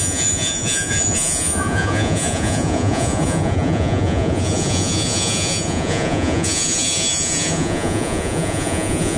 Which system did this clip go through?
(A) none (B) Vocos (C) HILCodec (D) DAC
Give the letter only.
B